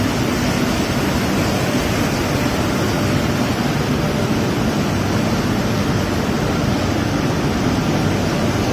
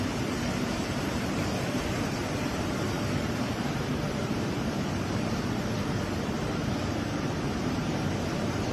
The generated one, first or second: second